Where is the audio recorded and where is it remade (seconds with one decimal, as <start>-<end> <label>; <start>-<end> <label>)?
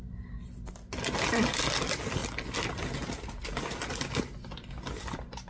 0.0-5.5 recorded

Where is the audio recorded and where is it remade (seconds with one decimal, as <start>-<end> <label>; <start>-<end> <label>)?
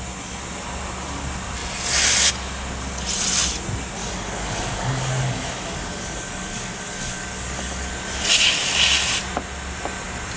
0.0-4.0 recorded; 4.0-7.9 remade; 7.9-10.4 recorded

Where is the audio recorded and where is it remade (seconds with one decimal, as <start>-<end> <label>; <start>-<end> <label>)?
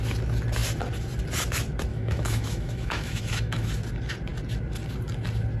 0.0-1.9 recorded; 1.9-3.7 remade; 3.7-5.6 recorded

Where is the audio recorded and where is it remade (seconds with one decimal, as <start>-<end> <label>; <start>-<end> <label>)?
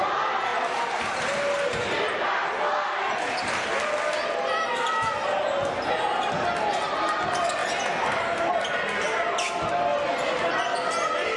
0.0-0.5 recorded; 0.5-3.3 remade; 3.3-7.6 recorded; 7.6-8.5 remade; 8.5-9.9 recorded; 9.9-10.5 remade; 10.5-11.4 recorded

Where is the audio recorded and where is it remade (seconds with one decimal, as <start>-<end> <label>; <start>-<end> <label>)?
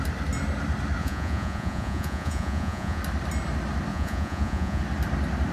0.0-1.0 recorded; 1.0-3.0 remade; 3.0-3.9 recorded; 3.9-4.8 remade; 4.8-5.5 recorded